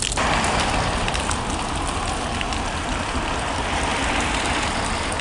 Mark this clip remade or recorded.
recorded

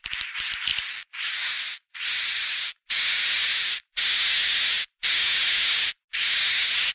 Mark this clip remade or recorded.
recorded